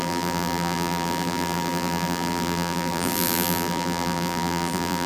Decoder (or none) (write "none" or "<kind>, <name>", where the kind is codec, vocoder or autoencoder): vocoder, BigVGAN v2